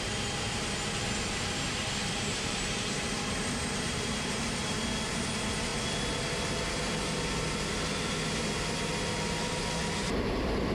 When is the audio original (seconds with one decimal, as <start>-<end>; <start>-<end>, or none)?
0.0-2.0; 4.8-10.7